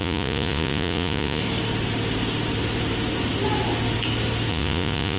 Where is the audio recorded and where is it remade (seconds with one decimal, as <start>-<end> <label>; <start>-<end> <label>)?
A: 0.0-1.4 remade; 1.4-4.5 recorded; 4.5-5.2 remade